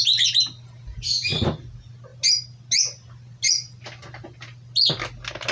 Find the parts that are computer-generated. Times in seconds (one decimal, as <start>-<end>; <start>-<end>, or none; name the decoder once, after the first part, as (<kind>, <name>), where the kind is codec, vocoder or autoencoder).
none